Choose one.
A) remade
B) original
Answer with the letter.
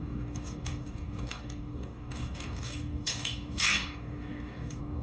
A